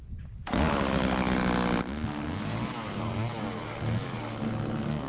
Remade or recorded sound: recorded